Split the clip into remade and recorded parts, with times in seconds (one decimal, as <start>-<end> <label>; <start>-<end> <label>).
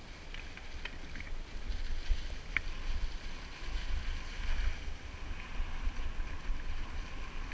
0.0-7.5 recorded